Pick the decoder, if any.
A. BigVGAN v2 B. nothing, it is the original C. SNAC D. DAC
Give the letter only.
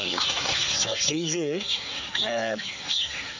C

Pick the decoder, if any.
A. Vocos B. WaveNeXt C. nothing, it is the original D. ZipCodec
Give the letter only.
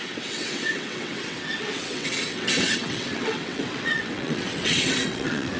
B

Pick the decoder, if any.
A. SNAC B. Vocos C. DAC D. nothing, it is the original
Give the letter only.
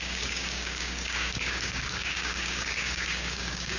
C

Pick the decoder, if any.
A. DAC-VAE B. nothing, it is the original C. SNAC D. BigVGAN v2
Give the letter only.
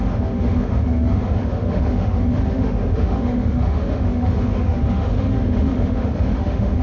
A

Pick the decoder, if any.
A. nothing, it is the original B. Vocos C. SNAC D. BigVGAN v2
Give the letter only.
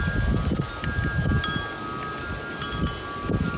A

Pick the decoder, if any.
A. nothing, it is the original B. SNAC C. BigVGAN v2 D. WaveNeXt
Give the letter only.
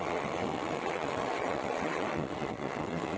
D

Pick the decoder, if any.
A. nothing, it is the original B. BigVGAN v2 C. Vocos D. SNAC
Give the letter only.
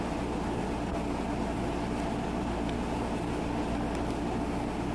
A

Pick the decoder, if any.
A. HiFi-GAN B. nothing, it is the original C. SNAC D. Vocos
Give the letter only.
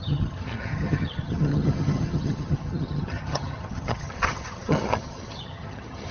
A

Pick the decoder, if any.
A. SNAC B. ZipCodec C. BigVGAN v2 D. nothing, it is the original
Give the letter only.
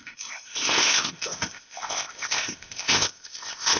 B